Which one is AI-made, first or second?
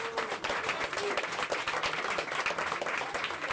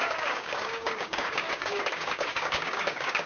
second